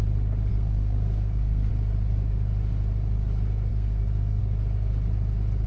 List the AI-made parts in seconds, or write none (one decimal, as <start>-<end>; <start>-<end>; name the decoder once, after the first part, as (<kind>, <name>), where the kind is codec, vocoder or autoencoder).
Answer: 0.5-1.7 (codec, SNAC); 3.7-4.4

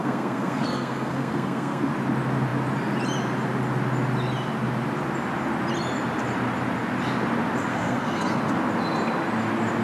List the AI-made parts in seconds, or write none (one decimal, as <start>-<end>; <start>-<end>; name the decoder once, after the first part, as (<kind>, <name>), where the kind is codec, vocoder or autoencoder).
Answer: 0.0-1.9 (codec, SNAC); 7.7-8.4

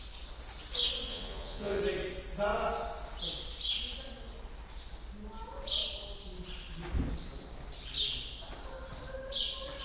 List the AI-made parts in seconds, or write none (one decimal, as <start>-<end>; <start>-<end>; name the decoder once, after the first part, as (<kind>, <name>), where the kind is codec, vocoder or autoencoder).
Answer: 1.1-1.8 (vocoder, Vocos)

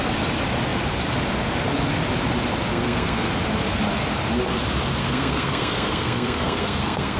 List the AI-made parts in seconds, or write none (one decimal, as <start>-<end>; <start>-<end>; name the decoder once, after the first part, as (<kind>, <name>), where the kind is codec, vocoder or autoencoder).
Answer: 2.7-3.3 (codec, SNAC); 5.0-7.2

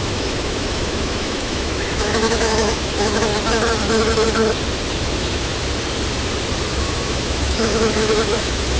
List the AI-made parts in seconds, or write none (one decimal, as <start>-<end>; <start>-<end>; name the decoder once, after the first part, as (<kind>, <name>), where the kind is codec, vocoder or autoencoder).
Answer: 0.0-3.3 (autoencoder, DAC-VAE); 4.9-5.5; 6.7-8.8

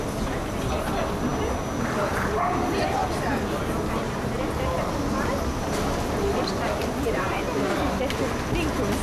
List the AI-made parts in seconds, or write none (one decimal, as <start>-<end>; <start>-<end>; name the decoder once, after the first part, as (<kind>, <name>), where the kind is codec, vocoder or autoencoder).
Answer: none